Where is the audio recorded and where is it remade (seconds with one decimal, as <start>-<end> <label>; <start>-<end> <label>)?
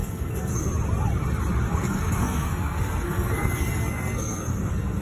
0.0-0.7 remade; 0.7-1.7 recorded; 1.7-5.0 remade